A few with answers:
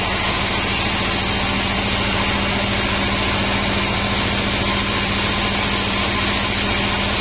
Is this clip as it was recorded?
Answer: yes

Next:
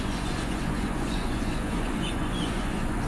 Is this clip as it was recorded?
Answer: no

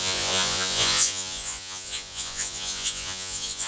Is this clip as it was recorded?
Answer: no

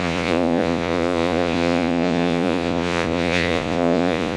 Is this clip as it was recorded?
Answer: no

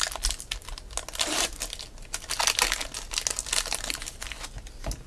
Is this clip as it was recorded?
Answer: yes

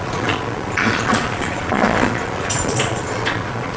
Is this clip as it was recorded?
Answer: no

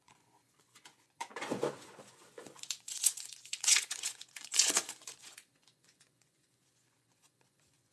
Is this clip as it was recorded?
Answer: no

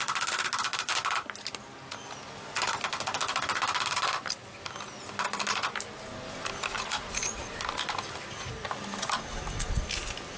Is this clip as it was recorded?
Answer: yes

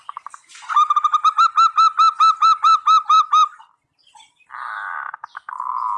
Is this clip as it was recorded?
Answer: yes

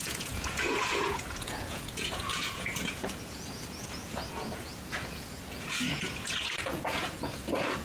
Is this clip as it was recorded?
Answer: no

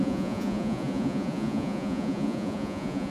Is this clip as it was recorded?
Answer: no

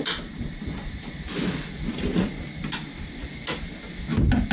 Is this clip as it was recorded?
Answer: yes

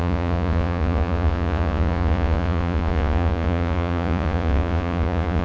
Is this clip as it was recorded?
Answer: no